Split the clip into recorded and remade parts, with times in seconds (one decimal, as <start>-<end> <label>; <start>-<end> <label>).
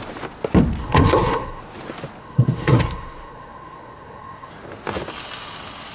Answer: 0.0-0.8 recorded; 0.8-1.6 remade; 1.6-2.2 recorded; 2.2-4.5 remade; 4.5-5.9 recorded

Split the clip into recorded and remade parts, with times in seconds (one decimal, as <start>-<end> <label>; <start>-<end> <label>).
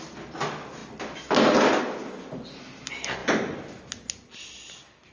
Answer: 0.0-5.1 recorded